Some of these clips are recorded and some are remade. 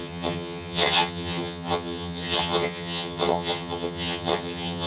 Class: remade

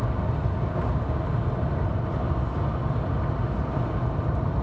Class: recorded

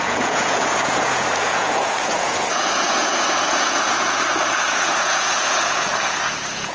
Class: remade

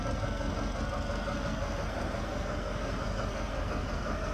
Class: remade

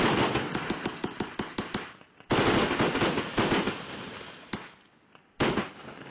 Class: recorded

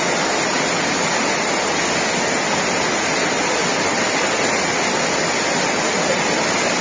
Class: recorded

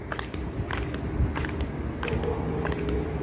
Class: recorded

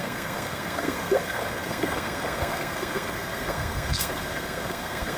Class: remade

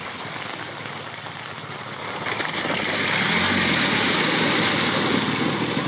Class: recorded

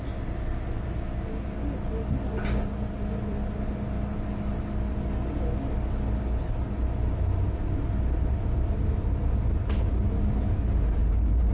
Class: recorded